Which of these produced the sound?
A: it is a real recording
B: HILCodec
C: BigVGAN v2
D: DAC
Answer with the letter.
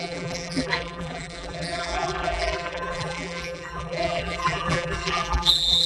C